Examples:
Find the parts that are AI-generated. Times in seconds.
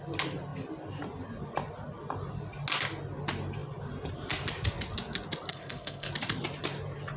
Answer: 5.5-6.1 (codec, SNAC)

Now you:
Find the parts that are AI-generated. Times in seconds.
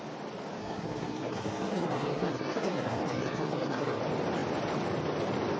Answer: 0.6-4.0 (codec, SNAC)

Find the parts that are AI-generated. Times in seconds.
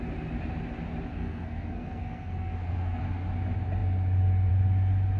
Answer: 1.1-3.0 (codec, SNAC)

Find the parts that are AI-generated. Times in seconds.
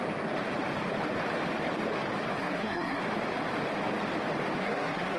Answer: 2.4-3.0 (codec, SNAC); 4.6-5.2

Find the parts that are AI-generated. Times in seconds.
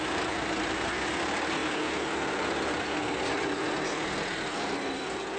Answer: none